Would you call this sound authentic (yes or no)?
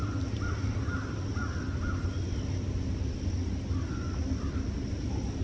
yes